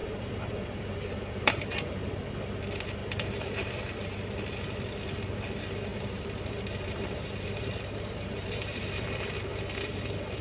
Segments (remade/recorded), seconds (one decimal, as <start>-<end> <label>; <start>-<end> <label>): 0.0-2.2 remade; 2.2-3.0 recorded; 3.0-3.7 remade; 3.7-5.9 recorded; 5.9-9.0 remade; 9.0-10.4 recorded